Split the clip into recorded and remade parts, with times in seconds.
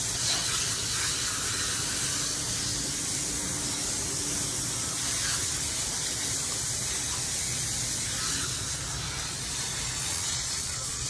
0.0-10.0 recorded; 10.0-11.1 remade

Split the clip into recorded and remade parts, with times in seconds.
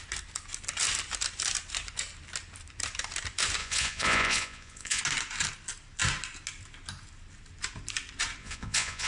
0.0-3.6 recorded; 3.6-5.0 remade; 5.0-8.4 recorded; 8.4-9.1 remade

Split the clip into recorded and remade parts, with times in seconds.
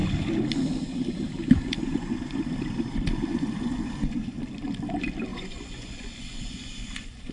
0.0-1.8 recorded; 1.8-2.4 remade; 2.4-3.3 recorded; 3.3-4.4 remade; 4.4-5.3 recorded; 5.3-7.3 remade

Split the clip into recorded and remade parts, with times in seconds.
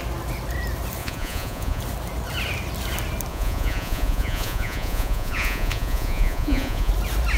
0.0-1.0 recorded; 1.0-1.8 remade; 1.8-3.3 recorded; 3.3-6.9 remade; 6.9-7.4 recorded